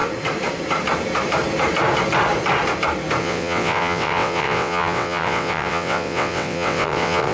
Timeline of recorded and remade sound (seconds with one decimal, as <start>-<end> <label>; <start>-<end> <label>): 0.0-3.2 recorded; 3.2-7.3 remade